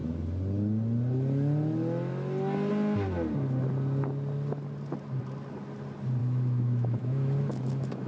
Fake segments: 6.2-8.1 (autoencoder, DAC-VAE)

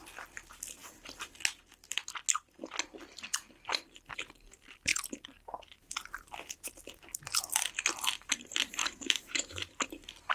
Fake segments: 8.8-9.7 (autoencoder, DAC-VAE)